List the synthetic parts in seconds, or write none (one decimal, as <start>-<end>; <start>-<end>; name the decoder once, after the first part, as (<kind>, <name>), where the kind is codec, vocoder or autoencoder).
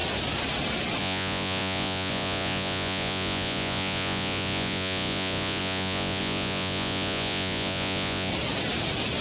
1.0-8.3 (vocoder, Vocos)